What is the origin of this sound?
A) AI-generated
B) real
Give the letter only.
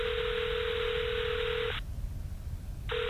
B